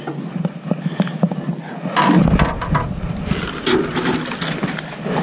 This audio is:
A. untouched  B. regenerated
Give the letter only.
A